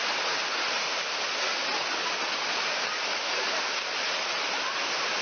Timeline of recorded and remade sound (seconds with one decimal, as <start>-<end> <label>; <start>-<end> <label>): 0.0-3.1 recorded; 3.1-3.6 remade; 3.6-5.2 recorded